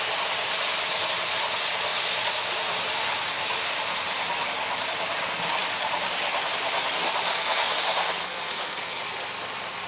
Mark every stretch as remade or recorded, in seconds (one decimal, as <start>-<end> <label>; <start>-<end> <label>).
0.0-7.3 recorded; 7.3-7.8 remade; 7.8-8.2 recorded; 8.2-9.0 remade; 9.0-9.9 recorded